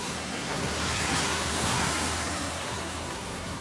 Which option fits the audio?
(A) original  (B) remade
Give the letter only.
B